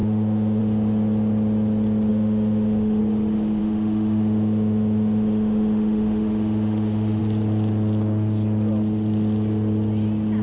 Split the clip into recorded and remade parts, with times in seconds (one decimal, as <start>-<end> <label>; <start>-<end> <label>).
0.0-0.6 remade; 0.6-2.1 recorded; 2.1-3.0 remade; 3.0-3.6 recorded; 3.6-7.2 remade; 7.2-10.4 recorded